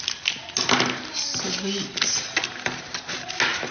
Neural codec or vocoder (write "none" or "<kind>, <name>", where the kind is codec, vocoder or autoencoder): none